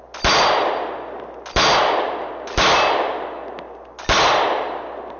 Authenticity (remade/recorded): recorded